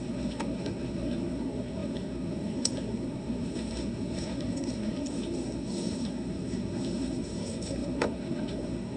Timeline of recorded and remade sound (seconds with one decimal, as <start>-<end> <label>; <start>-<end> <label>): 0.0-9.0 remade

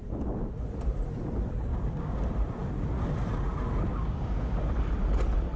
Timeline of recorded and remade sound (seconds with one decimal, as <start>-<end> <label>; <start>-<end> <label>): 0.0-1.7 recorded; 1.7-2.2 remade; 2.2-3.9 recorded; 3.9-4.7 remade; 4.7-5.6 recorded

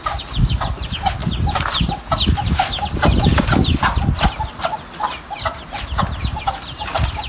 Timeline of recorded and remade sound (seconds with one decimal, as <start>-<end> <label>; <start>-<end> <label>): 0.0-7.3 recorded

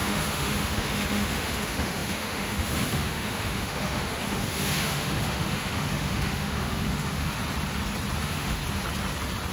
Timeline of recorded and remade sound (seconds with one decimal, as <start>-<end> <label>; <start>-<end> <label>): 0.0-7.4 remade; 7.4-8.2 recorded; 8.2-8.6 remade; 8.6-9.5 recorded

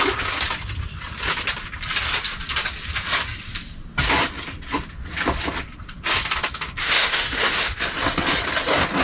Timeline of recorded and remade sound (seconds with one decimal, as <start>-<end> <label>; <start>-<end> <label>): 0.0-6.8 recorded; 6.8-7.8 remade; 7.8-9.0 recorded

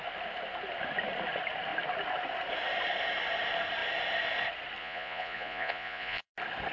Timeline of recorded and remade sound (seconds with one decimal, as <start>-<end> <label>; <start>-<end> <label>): 0.0-4.8 recorded; 4.8-6.3 remade; 6.3-6.7 recorded

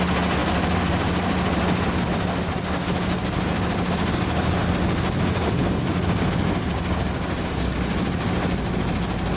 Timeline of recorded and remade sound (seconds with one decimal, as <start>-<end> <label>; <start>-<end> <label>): 0.0-9.4 recorded

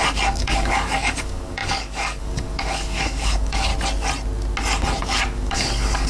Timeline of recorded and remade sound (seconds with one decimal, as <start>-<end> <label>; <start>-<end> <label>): 0.0-3.7 remade; 3.7-5.0 recorded; 5.0-6.1 remade